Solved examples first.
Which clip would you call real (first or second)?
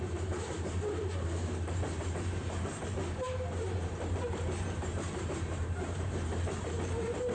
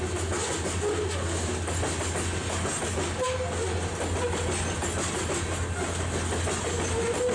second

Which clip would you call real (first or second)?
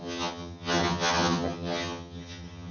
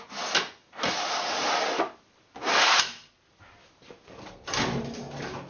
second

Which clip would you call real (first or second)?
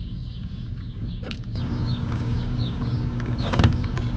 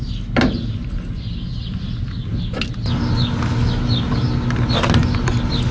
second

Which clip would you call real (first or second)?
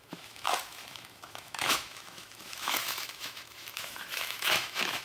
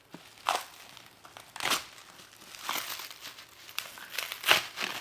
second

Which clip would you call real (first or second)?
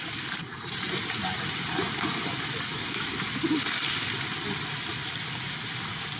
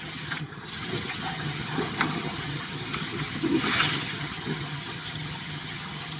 first